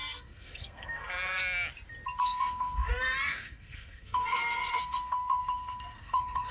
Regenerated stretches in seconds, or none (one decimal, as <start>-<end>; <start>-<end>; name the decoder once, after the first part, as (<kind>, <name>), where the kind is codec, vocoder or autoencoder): 0.0-1.4 (codec, SNAC); 2.2-6.5